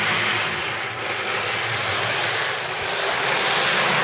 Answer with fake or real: real